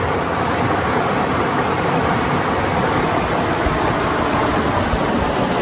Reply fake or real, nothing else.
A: real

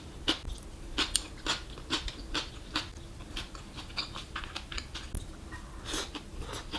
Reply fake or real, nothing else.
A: real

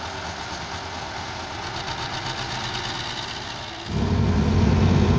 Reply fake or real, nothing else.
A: real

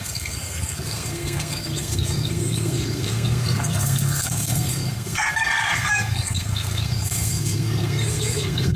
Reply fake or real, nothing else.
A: fake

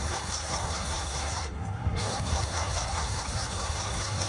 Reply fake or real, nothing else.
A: fake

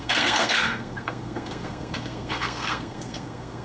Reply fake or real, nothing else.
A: fake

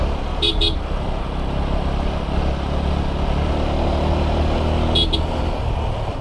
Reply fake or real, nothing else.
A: real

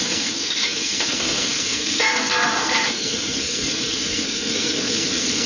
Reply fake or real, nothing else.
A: fake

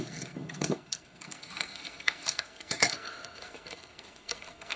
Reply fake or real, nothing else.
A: fake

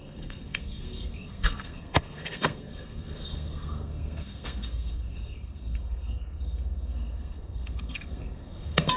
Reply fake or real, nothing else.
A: fake